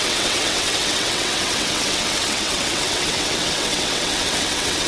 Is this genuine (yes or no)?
no